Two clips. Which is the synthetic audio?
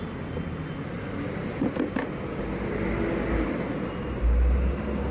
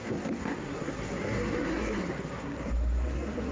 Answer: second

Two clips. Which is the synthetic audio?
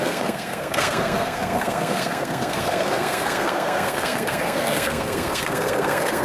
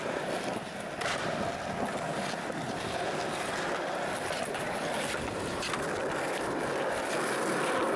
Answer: first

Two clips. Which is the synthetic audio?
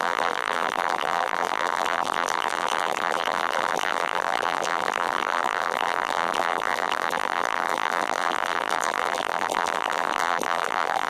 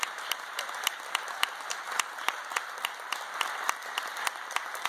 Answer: first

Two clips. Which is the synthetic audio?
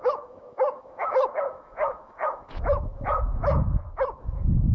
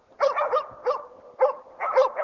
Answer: first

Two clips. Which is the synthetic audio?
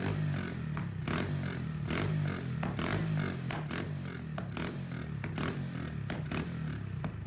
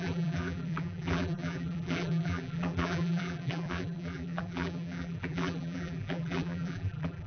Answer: second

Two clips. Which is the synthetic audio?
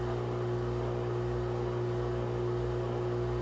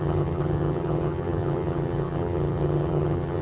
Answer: second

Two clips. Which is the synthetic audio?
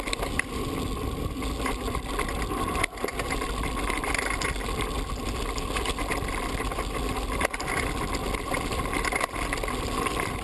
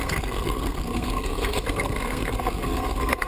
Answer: second